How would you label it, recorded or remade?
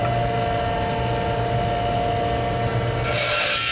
recorded